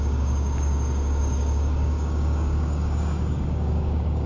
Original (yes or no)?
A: no